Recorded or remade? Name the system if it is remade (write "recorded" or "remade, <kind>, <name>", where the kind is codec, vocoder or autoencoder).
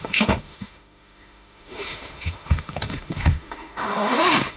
remade, autoencoder, DAC-VAE